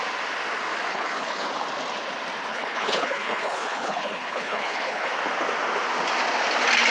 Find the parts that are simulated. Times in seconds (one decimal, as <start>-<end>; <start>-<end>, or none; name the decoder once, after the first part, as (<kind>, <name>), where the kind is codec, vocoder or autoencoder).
0.9-1.5 (codec, HILCodec); 2.5-5.1